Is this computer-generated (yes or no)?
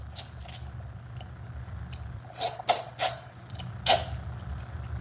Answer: no